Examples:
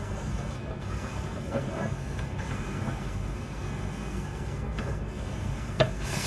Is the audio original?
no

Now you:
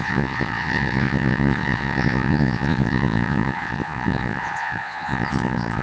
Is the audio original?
no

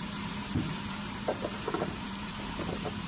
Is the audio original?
no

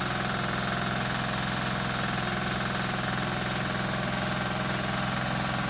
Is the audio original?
yes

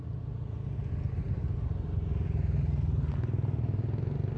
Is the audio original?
yes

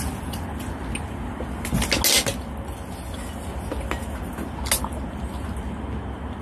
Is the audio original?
yes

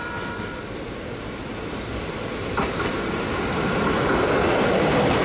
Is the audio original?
yes